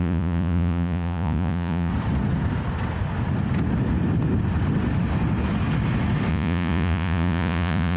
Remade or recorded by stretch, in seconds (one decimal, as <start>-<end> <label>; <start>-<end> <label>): 0.0-1.9 remade; 1.9-6.3 recorded; 6.3-8.0 remade

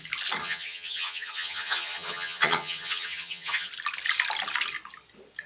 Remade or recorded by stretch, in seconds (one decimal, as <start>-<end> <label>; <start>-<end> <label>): 0.0-0.4 recorded; 0.4-3.7 remade; 3.7-5.5 recorded

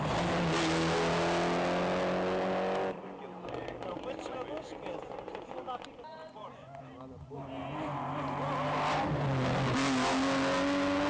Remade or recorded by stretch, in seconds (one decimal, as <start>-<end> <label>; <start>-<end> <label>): 0.0-6.2 recorded; 6.2-6.8 remade; 6.8-11.1 recorded

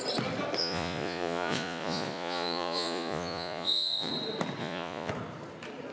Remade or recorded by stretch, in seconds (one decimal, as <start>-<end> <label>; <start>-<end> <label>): 0.0-0.6 recorded; 0.6-4.1 remade; 4.1-4.6 recorded; 4.6-5.1 remade; 5.1-5.9 recorded

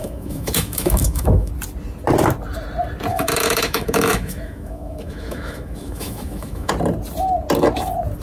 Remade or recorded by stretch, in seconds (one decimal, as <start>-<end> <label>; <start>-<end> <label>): 0.0-1.5 remade; 1.5-3.1 recorded; 3.1-6.7 remade; 6.7-8.2 recorded